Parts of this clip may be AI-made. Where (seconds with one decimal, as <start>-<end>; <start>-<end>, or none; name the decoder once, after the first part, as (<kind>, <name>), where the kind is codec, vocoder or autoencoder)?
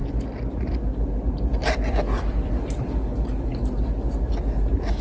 0.0-3.0 (vocoder, BigVGAN v2)